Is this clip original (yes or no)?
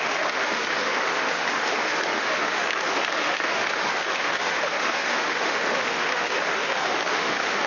no